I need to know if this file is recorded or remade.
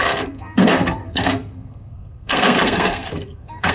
remade